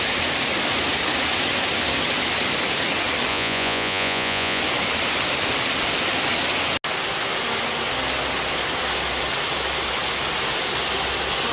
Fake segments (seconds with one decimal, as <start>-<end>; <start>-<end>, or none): 3.3-4.6